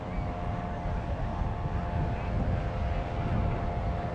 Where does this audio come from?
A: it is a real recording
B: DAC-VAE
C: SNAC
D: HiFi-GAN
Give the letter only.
A